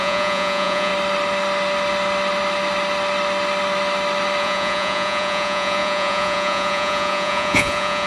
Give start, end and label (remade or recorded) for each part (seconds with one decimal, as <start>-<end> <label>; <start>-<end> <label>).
0.0-0.9 remade; 0.9-4.4 recorded; 4.4-8.1 remade